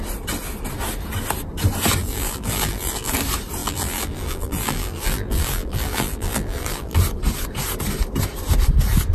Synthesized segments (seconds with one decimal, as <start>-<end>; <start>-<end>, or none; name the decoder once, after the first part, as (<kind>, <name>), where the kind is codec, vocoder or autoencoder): 2.0-3.1 (vocoder, BigVGAN v2); 3.6-7.0

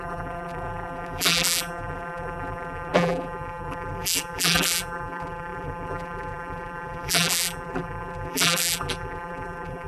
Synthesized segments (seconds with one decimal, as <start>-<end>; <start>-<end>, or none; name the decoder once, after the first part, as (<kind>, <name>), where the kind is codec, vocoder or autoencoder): 0.0-9.9 (vocoder, BigVGAN v2)

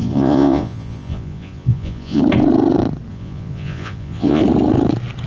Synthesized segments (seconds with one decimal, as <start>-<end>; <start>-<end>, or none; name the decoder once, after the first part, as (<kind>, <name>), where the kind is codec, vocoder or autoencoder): 0.0-2.2 (vocoder, Vocos); 3.1-4.4